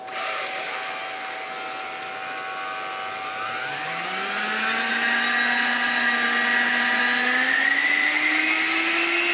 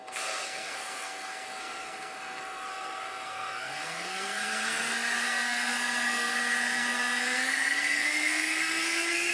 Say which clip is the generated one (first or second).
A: second